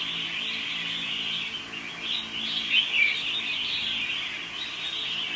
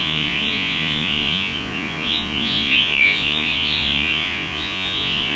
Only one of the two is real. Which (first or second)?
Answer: first